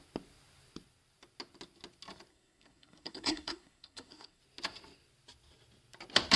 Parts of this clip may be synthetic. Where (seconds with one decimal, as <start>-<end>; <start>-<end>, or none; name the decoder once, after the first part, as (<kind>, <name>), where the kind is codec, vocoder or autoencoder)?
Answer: 2.3-4.4 (codec, SNAC)